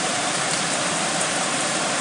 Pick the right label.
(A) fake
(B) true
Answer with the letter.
A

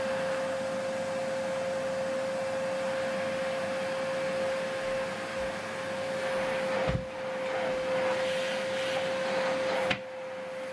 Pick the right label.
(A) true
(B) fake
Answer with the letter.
A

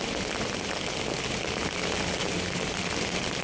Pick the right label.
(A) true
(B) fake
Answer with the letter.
A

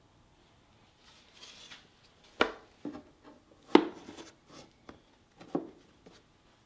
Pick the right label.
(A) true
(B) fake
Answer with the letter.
A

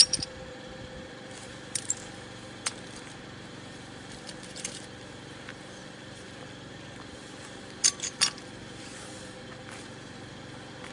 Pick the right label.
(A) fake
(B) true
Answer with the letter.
A